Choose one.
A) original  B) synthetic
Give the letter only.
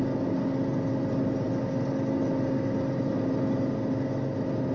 A